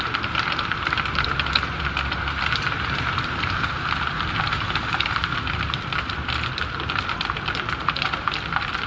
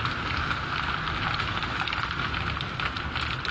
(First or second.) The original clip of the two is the second